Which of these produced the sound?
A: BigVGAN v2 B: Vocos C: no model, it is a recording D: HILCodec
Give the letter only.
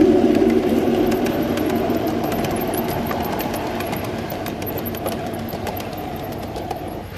A